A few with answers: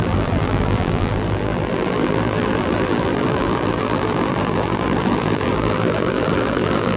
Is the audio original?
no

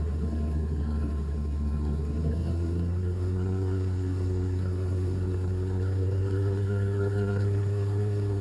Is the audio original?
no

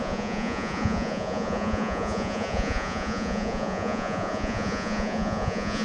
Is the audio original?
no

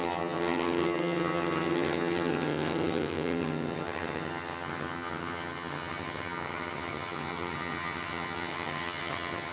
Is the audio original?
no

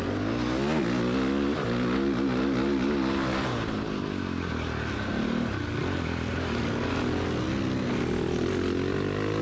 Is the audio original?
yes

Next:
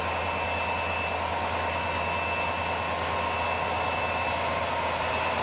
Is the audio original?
yes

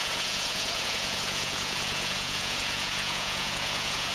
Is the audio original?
no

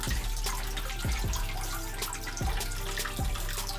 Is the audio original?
yes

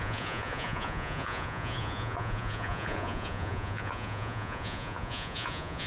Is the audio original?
no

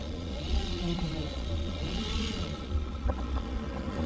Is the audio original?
no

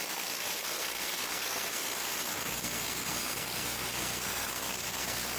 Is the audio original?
no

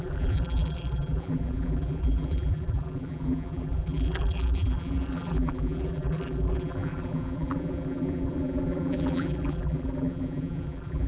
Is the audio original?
no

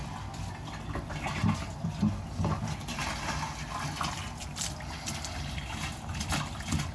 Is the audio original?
yes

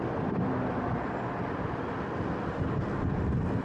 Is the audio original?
yes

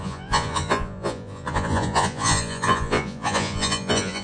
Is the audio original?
no